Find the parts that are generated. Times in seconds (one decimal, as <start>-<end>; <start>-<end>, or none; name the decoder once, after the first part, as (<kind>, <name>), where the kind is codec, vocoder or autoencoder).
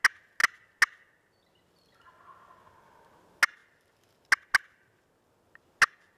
none